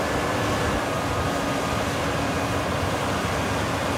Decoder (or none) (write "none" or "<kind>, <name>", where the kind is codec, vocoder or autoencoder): none